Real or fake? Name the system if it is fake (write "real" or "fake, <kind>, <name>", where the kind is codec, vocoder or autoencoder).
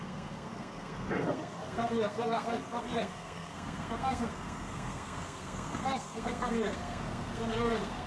fake, codec, SNAC